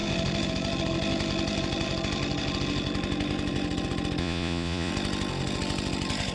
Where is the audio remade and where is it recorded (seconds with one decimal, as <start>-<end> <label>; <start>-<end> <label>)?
0.0-4.2 recorded; 4.2-4.9 remade; 4.9-6.3 recorded